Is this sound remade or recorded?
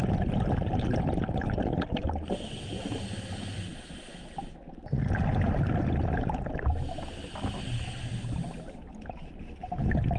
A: recorded